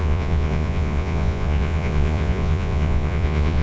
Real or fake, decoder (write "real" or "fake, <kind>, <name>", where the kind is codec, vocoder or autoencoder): fake, vocoder, Vocos